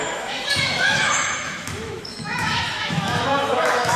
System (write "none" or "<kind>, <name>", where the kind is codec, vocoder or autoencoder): autoencoder, DAC-VAE